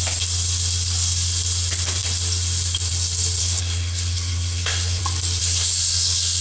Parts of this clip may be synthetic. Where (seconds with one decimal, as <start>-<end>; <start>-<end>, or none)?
3.4-5.0; 5.4-6.4